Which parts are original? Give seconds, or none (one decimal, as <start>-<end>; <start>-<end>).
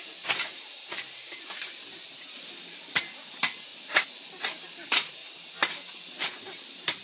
5.2-6.2